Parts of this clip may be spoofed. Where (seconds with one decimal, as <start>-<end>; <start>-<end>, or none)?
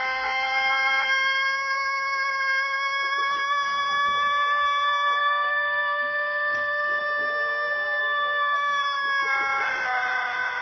5.2-7.0; 8.0-8.8